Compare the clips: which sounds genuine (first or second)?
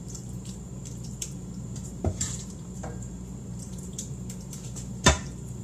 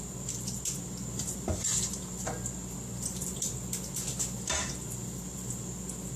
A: second